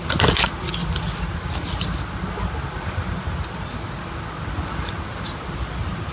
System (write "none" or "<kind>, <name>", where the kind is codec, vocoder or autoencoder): none